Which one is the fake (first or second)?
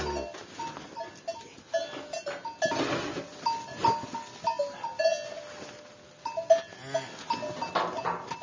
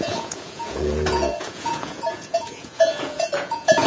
second